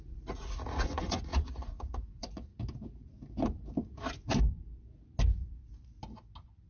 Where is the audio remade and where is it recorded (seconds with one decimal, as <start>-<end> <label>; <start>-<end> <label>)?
0.0-2.5 remade; 2.5-6.7 recorded